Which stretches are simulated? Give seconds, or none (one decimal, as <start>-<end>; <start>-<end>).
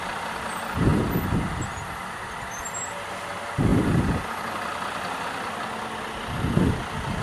none